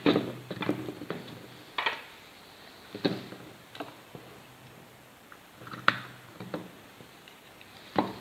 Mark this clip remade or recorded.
remade